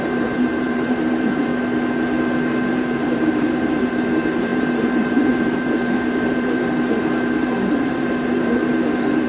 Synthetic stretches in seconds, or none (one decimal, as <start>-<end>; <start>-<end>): 0.0-1.5; 2.7-9.3

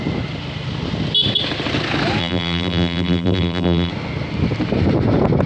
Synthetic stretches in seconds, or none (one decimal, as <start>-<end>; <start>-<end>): 2.2-3.9

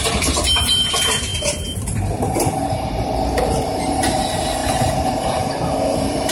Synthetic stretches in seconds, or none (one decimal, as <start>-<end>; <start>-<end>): 0.0-6.3